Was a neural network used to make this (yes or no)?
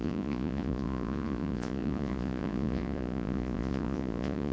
yes